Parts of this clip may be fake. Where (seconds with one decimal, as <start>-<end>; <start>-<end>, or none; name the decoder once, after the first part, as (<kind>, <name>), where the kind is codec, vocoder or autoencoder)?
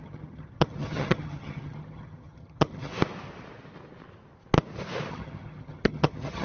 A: 0.0-2.9 (vocoder, HiFi-GAN); 5.1-6.4